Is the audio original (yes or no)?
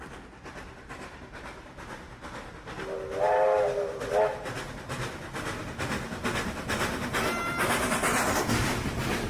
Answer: yes